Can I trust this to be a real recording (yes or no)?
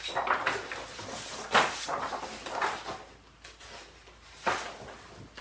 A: yes